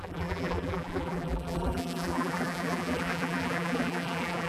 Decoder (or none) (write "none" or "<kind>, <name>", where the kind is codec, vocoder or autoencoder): vocoder, BigVGAN v2